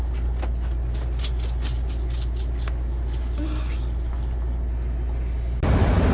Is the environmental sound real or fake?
real